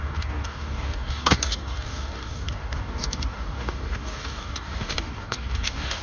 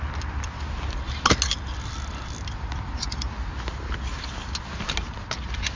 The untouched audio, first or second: second